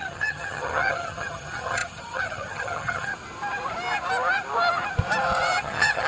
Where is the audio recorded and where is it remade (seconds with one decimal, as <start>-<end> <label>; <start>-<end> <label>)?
0.0-3.1 remade; 3.1-5.6 recorded; 5.6-6.1 remade